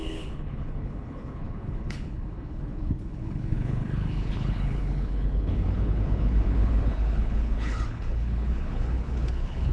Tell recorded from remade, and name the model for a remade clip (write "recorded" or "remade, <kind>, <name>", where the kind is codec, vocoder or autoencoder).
remade, codec, HILCodec